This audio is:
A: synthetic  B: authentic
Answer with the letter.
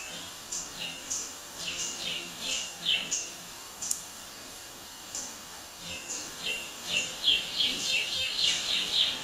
A